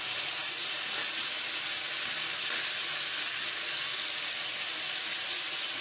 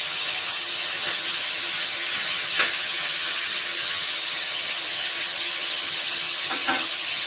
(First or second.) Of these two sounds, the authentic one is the first